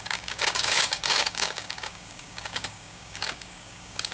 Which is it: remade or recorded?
remade